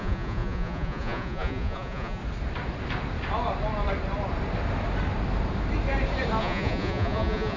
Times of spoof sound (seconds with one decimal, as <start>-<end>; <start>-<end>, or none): 0.0-2.2; 6.4-7.6